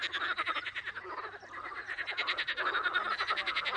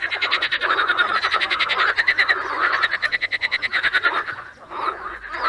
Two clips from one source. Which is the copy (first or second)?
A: second